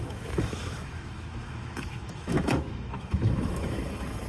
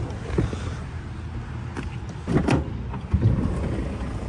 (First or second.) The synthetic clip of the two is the first